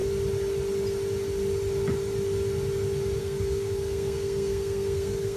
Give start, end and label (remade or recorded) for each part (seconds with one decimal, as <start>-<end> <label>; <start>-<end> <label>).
0.0-3.2 recorded; 3.2-5.4 remade